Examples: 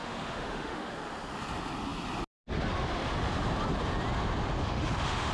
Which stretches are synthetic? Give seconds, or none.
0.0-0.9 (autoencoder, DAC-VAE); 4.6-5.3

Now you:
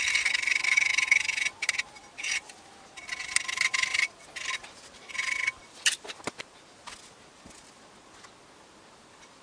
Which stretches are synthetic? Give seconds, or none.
none